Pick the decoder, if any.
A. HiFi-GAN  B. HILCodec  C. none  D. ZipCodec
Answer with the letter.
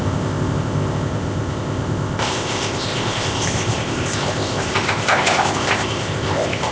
D